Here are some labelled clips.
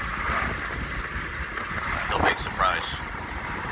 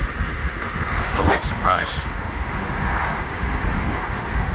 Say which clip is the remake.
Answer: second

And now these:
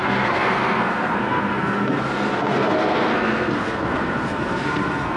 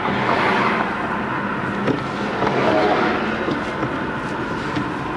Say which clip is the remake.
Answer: first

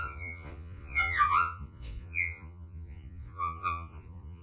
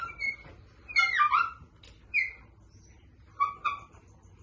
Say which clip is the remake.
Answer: first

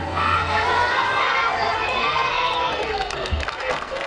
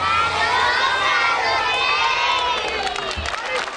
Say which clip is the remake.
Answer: first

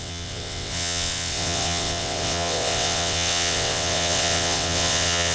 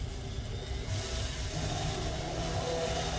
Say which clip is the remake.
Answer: first